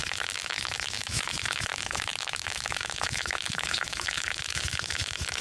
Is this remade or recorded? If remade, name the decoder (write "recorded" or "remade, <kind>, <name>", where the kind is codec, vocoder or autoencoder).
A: remade, autoencoder, DAC-VAE